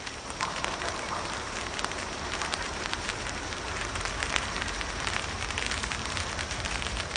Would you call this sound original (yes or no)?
no